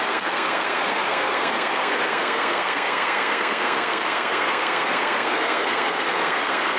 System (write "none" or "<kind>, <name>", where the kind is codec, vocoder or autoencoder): codec, SNAC